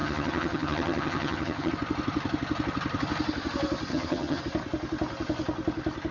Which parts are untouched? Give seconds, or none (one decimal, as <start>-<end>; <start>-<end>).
1.7-3.9; 4.4-6.1